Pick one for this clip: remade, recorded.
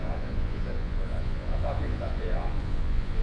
remade